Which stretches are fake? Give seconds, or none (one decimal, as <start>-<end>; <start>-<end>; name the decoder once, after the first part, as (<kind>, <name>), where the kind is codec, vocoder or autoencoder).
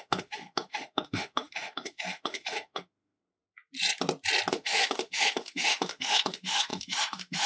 0.0-3.2 (autoencoder, DAC-VAE); 4.5-7.5